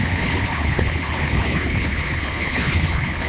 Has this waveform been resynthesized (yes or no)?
yes